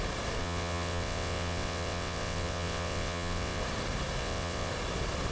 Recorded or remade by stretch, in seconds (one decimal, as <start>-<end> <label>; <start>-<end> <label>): 0.0-0.4 recorded; 0.4-3.6 remade; 3.6-4.2 recorded; 4.2-4.7 remade; 4.7-5.3 recorded